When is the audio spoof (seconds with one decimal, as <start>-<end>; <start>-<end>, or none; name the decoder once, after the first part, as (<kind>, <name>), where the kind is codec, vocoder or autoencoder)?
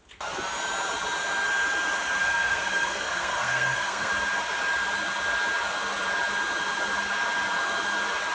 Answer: 2.2-4.1 (codec, SNAC)